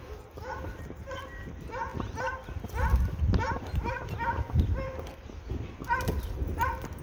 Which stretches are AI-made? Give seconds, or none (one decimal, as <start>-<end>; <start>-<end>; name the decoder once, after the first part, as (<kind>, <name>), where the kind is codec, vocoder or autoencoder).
none